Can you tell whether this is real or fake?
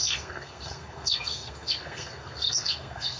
fake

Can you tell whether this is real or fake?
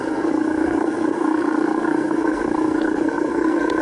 fake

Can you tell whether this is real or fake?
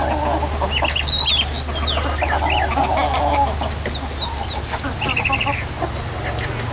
real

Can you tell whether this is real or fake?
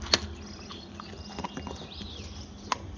real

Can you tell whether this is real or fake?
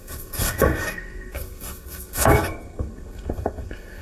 fake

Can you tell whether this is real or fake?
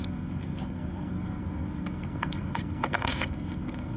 fake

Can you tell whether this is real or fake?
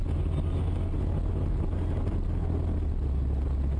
real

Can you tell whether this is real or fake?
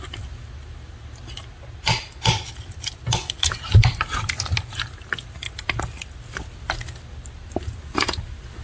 real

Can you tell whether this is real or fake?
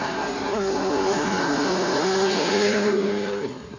fake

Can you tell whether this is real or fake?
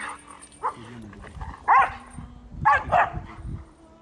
real